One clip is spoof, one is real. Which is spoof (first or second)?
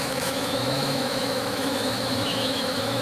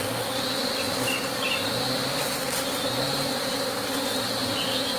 first